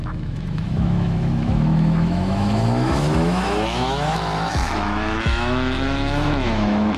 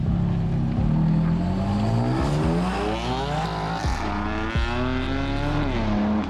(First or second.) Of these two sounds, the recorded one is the second